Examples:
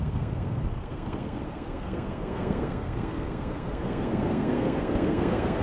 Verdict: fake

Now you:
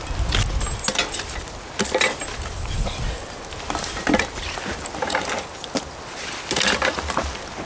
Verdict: real